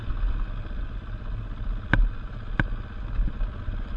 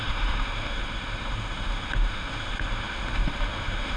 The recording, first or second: first